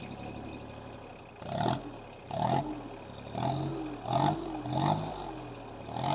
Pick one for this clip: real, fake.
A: real